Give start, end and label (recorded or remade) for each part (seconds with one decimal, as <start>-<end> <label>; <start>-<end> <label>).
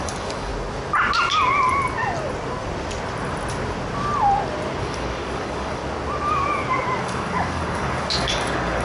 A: 0.0-0.5 remade; 0.5-4.8 recorded; 4.8-5.8 remade; 5.8-7.0 recorded; 7.0-8.8 remade